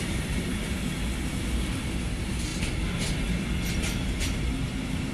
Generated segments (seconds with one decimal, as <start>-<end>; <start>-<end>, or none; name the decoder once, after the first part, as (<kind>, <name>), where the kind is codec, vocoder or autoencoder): 0.0-0.5 (vocoder, BigVGAN v2); 2.0-2.5